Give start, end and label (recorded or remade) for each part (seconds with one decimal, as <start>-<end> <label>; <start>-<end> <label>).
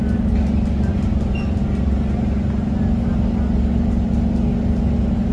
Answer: 0.0-5.3 recorded